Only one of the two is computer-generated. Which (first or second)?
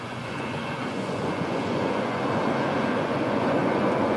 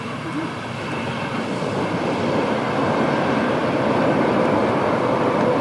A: first